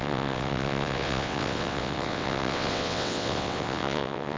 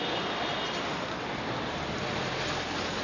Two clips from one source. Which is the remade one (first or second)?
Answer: first